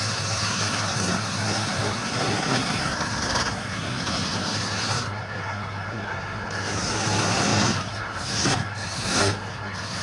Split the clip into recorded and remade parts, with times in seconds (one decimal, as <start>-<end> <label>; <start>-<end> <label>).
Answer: 0.0-10.0 remade